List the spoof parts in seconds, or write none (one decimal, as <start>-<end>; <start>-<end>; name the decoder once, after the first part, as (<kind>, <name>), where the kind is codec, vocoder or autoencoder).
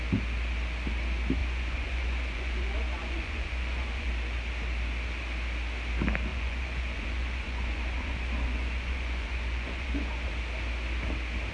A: 1.4-4.1 (vocoder, Vocos); 6.3-10.3